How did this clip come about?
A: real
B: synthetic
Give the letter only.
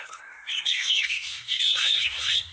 B